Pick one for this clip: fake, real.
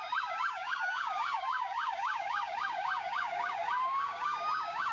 fake